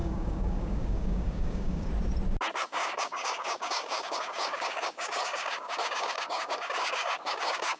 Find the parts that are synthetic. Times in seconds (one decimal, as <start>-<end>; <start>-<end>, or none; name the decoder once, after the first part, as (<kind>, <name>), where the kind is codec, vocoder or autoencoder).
0.0-1.9 (codec, DAC); 2.6-7.8